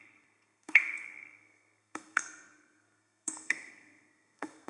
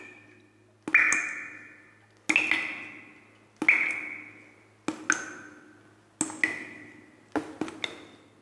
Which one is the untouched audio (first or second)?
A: second